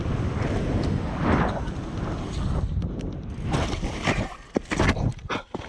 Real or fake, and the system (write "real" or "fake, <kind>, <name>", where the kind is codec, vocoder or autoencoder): real